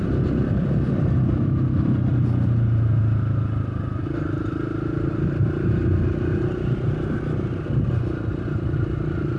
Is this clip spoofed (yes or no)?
no